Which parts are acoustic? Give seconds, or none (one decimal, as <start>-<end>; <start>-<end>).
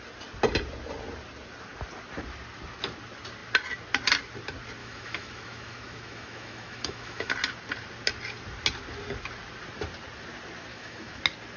0.0-4.8; 7.3-10.7; 11.2-11.6